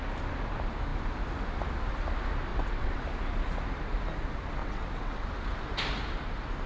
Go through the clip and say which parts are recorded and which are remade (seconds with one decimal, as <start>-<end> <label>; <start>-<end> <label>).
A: 0.0-2.5 recorded; 2.5-3.0 remade; 3.0-4.6 recorded; 4.6-5.3 remade; 5.3-6.7 recorded